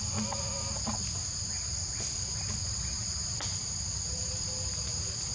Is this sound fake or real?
real